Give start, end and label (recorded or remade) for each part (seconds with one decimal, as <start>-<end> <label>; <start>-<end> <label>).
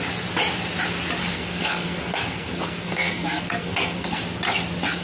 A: 0.0-1.2 recorded; 1.2-4.2 remade; 4.2-5.0 recorded